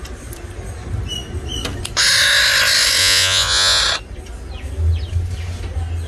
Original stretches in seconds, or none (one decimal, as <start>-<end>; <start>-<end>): 0.0-3.0; 3.8-6.1